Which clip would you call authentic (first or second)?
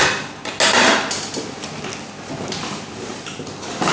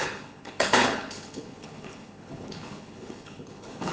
first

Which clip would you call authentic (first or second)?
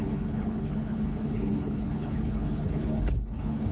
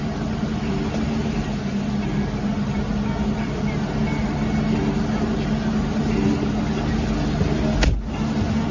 second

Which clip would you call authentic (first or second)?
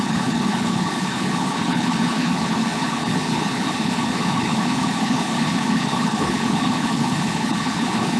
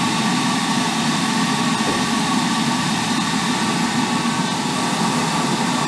second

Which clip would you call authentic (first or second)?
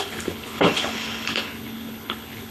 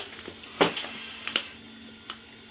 second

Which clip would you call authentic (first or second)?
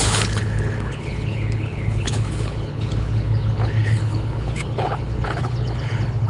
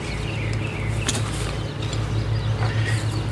second